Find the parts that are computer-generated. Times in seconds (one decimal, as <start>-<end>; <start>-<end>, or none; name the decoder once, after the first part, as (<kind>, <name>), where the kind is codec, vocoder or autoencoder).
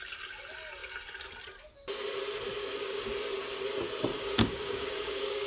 2.6-3.1 (codec, DAC); 4.1-5.5